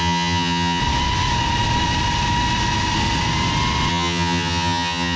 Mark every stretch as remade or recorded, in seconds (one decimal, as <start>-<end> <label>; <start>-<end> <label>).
0.0-0.8 remade; 0.8-3.9 recorded; 3.9-5.2 remade